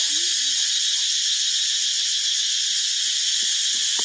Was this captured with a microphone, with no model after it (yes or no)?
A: yes